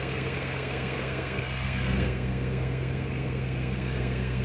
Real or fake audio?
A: fake